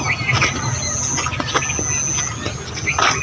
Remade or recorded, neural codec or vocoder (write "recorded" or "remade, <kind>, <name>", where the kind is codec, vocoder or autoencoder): recorded